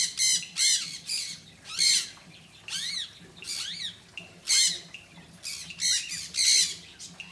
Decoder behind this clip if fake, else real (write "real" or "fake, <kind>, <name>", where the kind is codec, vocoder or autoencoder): real